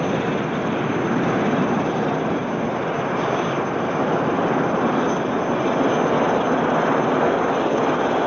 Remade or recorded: recorded